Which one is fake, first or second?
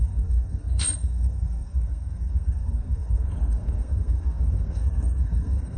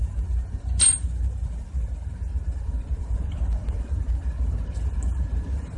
first